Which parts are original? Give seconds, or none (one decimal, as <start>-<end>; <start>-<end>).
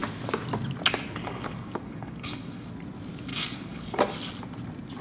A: 0.0-1.2; 2.7-3.3; 4.0-5.0